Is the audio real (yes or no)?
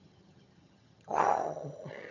no